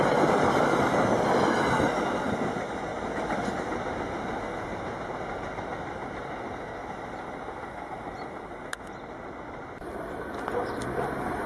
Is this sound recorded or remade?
recorded